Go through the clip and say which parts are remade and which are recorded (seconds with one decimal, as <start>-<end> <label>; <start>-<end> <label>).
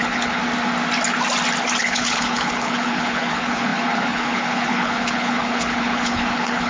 0.0-0.4 remade; 0.4-1.8 recorded; 1.8-6.7 remade